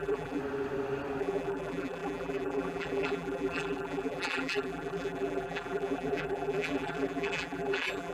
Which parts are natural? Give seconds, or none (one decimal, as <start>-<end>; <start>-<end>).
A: 0.4-1.2

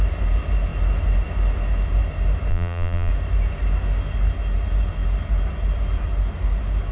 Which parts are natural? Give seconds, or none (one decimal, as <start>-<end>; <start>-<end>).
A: 0.0-2.5; 3.1-6.9

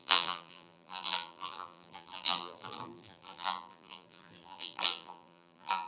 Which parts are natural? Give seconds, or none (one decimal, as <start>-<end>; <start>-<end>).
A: none

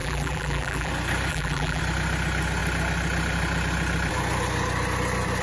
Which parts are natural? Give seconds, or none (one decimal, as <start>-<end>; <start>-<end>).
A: 0.9-1.3; 1.8-5.4